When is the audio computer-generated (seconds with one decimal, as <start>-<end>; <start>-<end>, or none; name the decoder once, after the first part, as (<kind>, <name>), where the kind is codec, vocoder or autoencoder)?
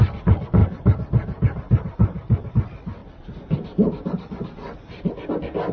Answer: 0.6-2.5 (vocoder, BigVGAN v2)